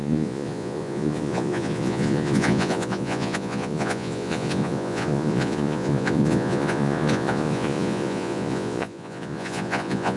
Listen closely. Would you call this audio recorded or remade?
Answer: remade